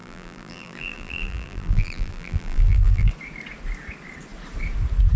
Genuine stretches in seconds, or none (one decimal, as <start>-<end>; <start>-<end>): 3.1-5.2